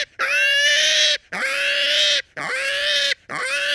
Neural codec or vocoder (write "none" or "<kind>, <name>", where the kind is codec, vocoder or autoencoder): none